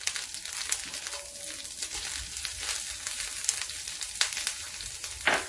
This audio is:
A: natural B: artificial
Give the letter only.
A